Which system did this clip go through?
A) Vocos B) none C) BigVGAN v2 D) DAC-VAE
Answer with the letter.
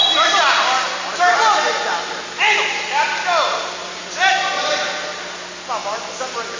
B